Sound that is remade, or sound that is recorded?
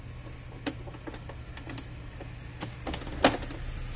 recorded